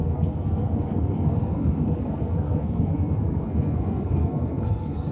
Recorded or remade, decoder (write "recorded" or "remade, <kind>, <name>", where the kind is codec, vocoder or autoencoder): remade, codec, SNAC